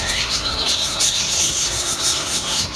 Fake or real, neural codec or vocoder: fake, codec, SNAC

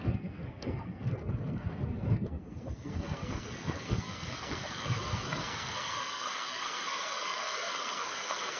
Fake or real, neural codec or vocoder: fake, codec, SNAC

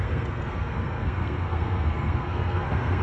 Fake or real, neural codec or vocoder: fake, codec, SNAC